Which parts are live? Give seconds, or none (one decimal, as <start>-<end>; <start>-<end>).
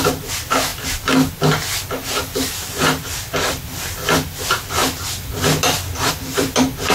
0.7-2.8